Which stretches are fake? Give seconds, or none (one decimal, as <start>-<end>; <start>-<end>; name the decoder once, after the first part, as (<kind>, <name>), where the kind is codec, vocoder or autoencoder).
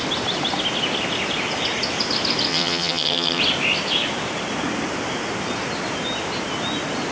2.5-3.4 (vocoder, HiFi-GAN)